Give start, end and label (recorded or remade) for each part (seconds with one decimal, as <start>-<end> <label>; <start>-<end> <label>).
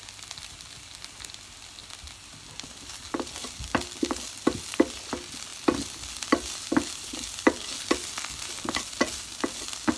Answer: 0.0-10.0 recorded